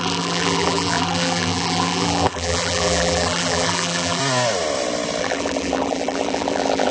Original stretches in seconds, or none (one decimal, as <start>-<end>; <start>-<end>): 4.2-5.2